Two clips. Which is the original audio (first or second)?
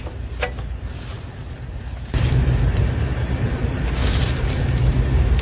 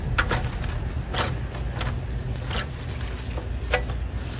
second